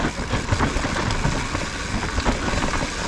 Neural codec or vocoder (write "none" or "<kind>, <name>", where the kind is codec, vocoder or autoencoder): none